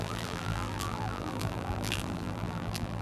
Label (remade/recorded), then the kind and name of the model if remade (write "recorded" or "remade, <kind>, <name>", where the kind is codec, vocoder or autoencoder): remade, vocoder, BigVGAN v2